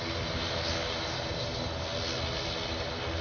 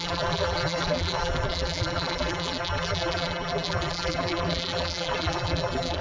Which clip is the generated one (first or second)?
second